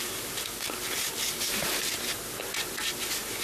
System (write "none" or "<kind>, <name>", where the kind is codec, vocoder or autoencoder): none